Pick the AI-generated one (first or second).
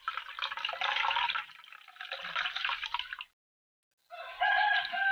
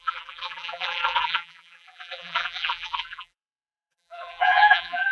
second